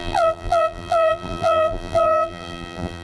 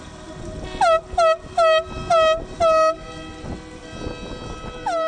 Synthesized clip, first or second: first